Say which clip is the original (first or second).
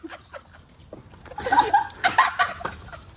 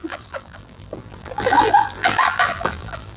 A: first